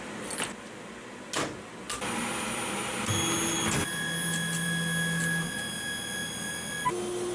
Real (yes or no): yes